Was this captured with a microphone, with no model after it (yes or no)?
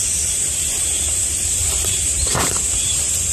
no